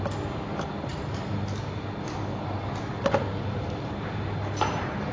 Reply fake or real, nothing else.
real